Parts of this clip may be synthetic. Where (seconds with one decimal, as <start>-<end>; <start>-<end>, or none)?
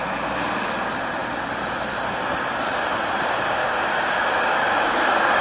3.6-5.4